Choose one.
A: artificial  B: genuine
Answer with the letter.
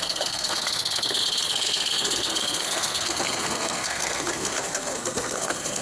A